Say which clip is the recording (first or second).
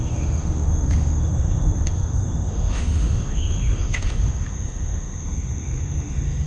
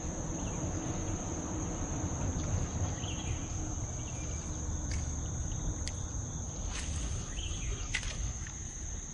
second